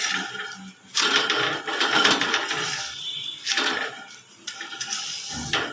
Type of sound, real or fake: real